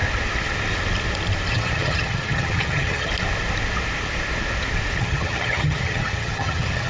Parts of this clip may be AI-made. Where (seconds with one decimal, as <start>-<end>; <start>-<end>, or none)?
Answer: 1.5-3.1; 5.0-6.9